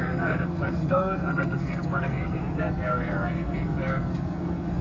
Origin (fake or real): fake